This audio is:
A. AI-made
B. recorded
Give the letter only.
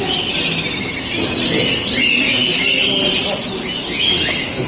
B